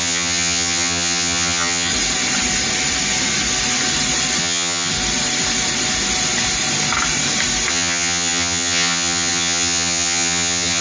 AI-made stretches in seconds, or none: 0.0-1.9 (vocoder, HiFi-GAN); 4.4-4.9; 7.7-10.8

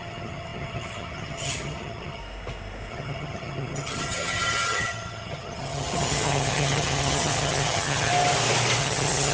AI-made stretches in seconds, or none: 0.0-2.2 (vocoder, HiFi-GAN); 2.9-8.1; 8.8-9.3

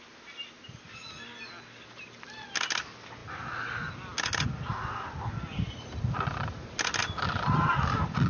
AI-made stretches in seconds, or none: none

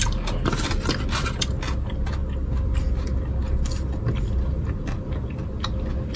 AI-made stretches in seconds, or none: none

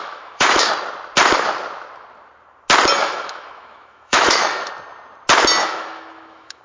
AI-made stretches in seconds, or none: 0.0-0.7 (autoencoder, DAC-VAE); 3.0-4.7; 5.6-6.6